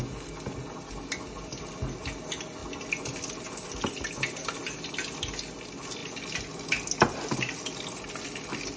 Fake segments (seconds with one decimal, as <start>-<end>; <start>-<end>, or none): none